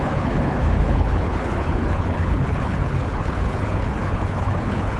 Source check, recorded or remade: remade